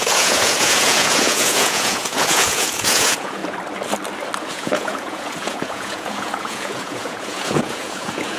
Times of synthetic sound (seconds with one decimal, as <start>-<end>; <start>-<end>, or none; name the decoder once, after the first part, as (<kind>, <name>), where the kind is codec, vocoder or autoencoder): 0.0-3.4 (vocoder, Vocos); 4.5-8.4